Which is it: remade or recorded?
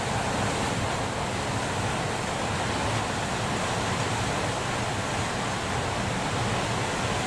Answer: recorded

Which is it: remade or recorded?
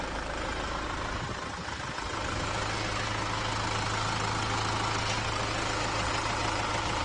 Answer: recorded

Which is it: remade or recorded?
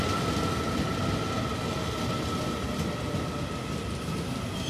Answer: recorded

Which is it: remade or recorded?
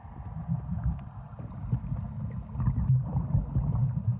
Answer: recorded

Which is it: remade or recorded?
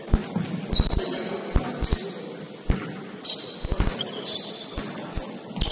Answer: recorded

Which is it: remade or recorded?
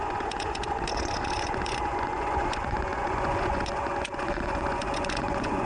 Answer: remade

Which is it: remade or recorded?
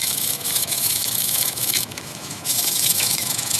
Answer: remade